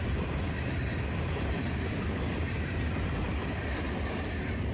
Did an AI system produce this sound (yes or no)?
yes